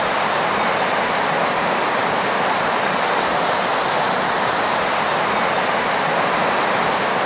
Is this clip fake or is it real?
real